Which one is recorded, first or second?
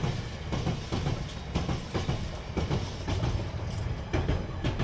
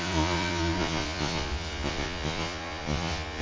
first